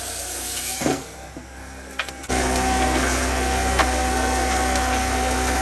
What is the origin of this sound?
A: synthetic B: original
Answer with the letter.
A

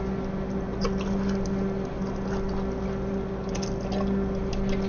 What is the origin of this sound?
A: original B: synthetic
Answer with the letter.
A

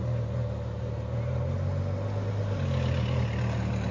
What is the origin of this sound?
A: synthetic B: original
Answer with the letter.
B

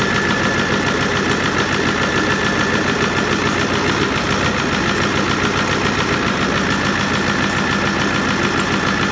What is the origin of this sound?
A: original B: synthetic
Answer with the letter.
A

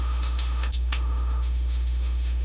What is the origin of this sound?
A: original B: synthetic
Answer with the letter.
B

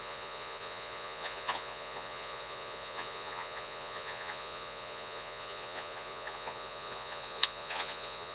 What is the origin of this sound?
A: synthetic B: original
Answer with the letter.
A